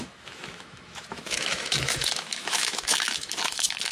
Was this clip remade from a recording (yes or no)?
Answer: yes